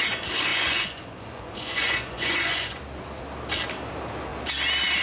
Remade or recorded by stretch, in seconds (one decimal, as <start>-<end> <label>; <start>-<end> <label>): 0.0-0.5 recorded; 0.5-2.8 remade; 2.8-5.0 recorded